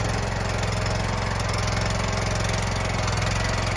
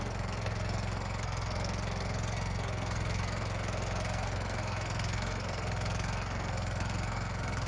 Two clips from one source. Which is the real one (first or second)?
first